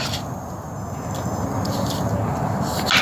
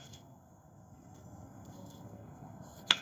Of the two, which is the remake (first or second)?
second